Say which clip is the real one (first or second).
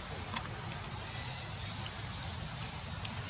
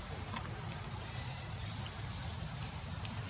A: first